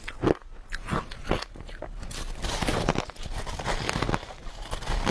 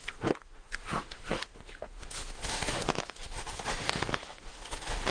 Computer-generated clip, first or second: second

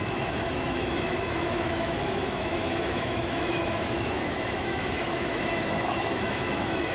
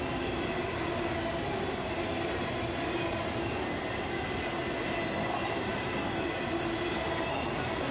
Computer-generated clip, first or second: first